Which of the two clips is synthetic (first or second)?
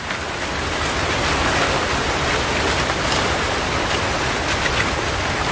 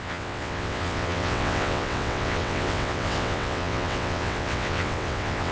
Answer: second